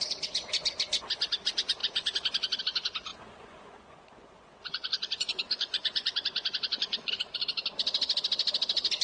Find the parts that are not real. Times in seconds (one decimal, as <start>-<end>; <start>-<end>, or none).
3.1-7.1